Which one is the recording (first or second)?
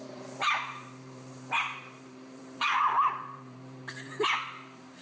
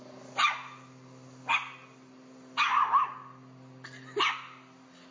second